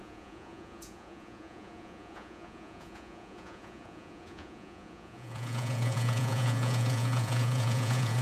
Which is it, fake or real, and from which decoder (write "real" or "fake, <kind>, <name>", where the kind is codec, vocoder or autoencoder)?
fake, vocoder, Vocos